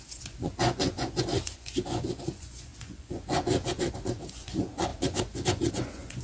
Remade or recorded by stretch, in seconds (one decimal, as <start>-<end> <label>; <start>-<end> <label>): 0.0-6.2 remade